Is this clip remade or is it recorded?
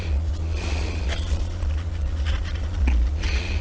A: remade